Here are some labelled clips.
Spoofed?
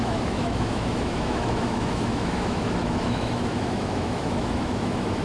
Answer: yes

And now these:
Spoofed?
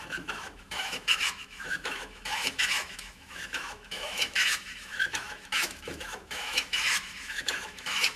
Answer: yes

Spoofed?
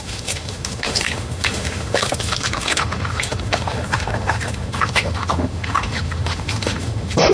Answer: yes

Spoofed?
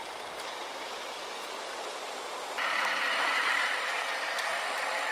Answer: no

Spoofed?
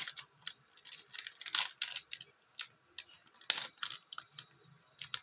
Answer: no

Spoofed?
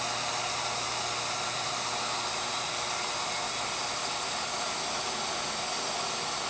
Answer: no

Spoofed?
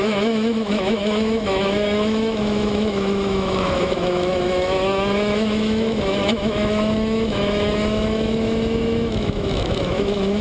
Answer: yes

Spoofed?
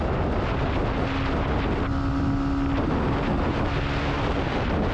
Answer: no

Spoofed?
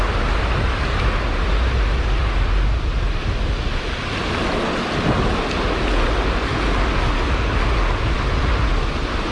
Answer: no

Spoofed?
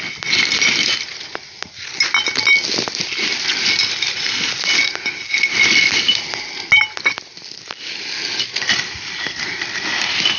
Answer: no